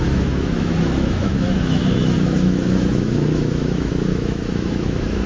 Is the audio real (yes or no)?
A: no